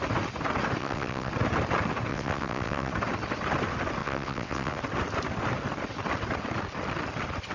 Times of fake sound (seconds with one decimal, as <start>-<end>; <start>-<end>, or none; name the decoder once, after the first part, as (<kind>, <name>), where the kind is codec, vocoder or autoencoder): 0.8-1.3 (vocoder, WaveNeXt); 2.1-2.9; 4.0-4.8